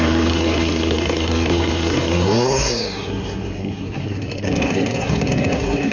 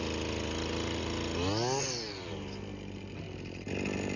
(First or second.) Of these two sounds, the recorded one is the second